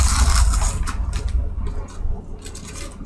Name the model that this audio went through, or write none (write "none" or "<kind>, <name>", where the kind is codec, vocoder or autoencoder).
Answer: none